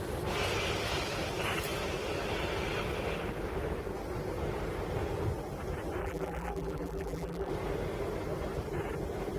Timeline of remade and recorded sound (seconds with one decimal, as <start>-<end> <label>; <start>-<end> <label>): 0.0-6.0 recorded; 6.0-7.5 remade; 7.5-9.4 recorded